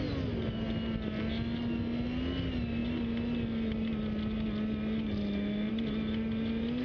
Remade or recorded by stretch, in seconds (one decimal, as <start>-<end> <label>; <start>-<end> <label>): 0.0-6.8 recorded